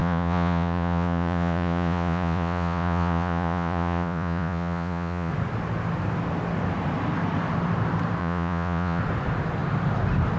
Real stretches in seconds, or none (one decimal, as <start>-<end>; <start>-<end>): 5.3-8.2; 9.0-10.4